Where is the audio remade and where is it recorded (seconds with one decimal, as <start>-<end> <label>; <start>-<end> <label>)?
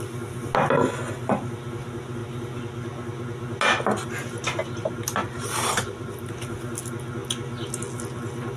0.0-5.2 recorded; 5.2-6.3 remade; 6.3-8.6 recorded